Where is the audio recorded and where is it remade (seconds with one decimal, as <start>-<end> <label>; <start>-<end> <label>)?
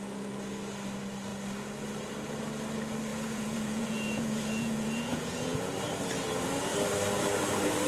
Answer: 0.0-3.1 recorded; 3.1-5.7 remade; 5.7-7.9 recorded